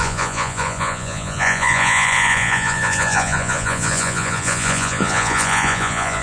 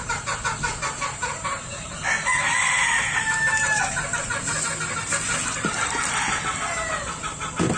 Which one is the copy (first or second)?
first